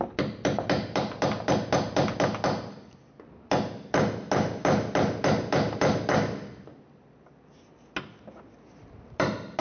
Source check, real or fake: real